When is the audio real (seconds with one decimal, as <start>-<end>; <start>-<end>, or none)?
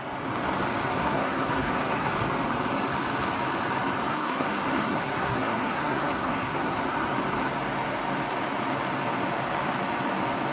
0.0-0.9; 2.1-4.1; 6.8-10.5